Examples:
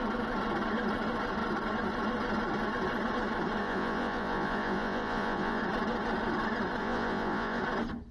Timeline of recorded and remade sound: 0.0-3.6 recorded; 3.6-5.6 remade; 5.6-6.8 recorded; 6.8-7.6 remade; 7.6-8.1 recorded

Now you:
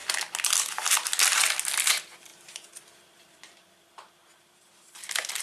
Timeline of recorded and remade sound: 0.0-2.3 recorded; 2.3-5.4 remade

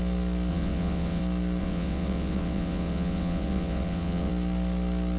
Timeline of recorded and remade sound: 0.0-0.5 recorded; 0.5-1.2 remade; 1.2-1.6 recorded; 1.6-4.3 remade; 4.3-5.2 recorded

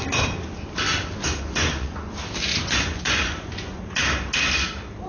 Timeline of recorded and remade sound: 0.0-1.2 recorded; 1.2-2.1 remade; 2.1-2.5 recorded; 2.5-3.8 remade; 3.8-5.1 recorded

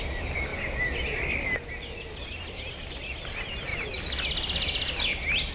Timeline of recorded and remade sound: 0.0-5.5 recorded

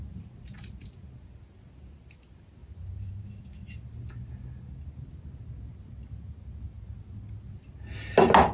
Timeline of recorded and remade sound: 0.0-8.5 recorded

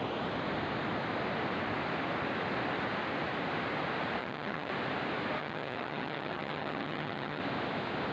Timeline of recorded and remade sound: 0.0-4.2 recorded; 4.2-4.7 remade; 4.7-5.4 recorded; 5.4-7.4 remade; 7.4-8.1 recorded

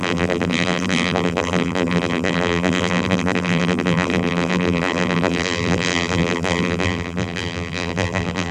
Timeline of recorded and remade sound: 0.0-8.5 remade